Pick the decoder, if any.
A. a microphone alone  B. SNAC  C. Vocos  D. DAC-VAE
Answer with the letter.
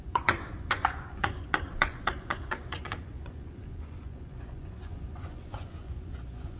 C